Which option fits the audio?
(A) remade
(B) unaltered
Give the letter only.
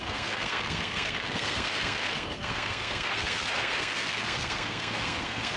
A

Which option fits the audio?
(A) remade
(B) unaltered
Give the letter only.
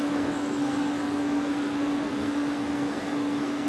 A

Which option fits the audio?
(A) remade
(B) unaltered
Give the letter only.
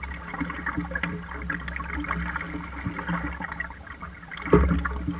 B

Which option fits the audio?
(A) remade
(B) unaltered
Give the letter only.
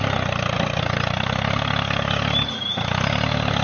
B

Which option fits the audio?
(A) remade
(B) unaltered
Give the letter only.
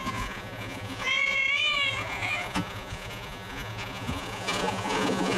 A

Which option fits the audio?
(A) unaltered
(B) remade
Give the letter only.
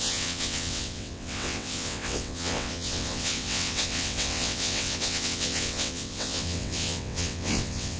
B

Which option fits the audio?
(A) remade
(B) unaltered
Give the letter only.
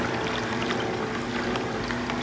B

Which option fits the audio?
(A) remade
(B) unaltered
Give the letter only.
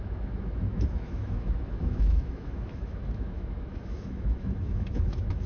A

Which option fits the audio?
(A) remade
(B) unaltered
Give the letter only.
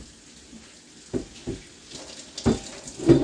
B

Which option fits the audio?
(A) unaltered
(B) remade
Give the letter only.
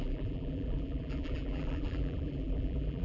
B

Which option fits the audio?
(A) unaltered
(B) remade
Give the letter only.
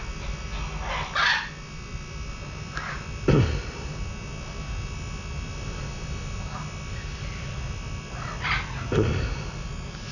A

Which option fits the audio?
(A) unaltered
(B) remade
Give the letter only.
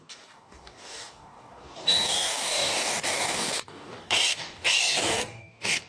B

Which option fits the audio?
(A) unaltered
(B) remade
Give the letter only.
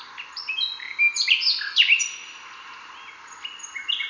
A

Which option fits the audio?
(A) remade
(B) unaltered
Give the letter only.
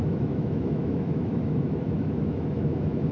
A